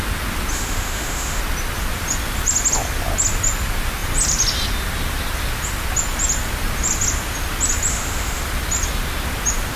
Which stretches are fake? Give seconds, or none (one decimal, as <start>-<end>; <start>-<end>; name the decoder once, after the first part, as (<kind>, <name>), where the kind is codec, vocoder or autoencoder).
0.5-1.4 (autoencoder, DAC-VAE); 7.9-8.4